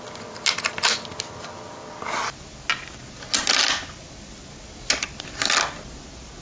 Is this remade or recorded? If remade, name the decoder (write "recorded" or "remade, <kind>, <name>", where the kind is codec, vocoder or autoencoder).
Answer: recorded